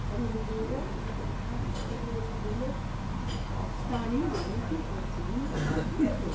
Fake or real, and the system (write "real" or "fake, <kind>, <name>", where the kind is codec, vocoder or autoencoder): real